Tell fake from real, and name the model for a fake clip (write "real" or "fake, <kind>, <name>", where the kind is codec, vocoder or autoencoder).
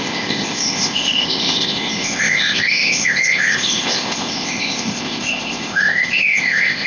fake, codec, ZipCodec